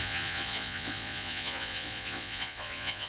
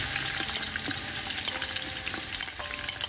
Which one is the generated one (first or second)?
first